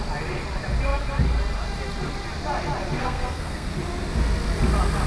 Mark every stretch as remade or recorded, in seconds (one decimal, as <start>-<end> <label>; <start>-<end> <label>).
0.0-3.0 recorded; 3.0-3.7 remade; 3.7-5.1 recorded